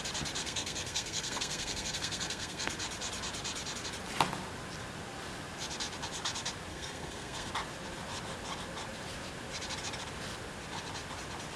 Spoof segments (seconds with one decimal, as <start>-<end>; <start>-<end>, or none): 0.4-2.7; 6.7-7.5